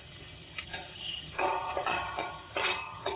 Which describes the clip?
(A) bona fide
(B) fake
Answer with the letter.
B